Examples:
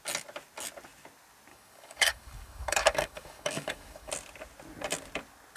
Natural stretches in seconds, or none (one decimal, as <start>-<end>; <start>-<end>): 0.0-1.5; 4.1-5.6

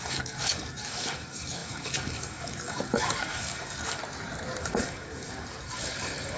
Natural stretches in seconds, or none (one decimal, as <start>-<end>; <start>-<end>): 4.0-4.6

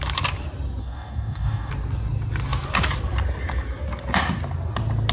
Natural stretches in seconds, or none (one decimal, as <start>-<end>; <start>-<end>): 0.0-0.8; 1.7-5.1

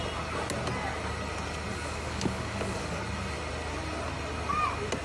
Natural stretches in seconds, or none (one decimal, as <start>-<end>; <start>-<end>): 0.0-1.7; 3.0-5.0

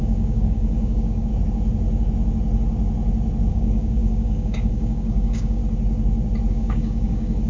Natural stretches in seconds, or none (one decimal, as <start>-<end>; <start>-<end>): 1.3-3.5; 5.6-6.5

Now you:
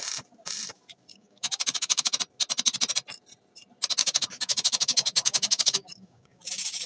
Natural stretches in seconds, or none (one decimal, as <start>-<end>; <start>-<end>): 0.0-1.1; 2.2-4.0

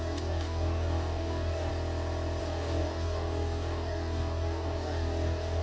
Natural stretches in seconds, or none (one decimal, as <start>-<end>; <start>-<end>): 1.7-2.4

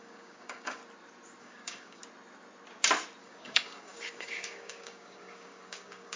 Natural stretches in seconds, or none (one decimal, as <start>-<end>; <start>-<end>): 0.8-1.4; 2.0-3.2